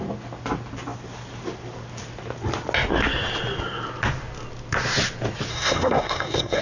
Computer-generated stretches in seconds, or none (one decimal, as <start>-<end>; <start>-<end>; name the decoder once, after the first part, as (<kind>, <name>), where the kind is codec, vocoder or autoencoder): 5.5-6.6 (codec, SNAC)